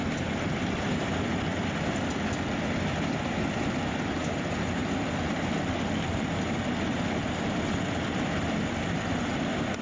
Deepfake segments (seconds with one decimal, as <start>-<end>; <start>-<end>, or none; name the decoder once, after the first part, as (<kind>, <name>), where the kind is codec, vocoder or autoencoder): none